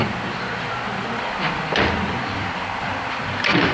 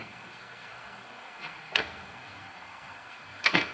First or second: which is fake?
second